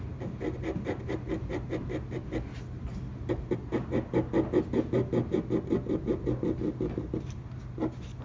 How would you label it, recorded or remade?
recorded